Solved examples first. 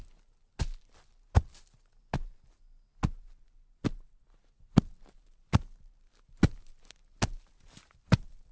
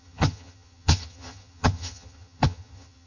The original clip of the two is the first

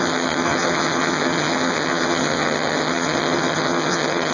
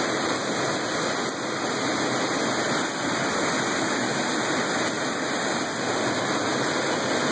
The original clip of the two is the second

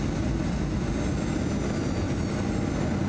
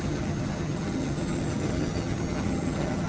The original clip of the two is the first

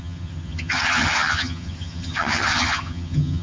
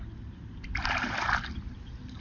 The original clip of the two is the second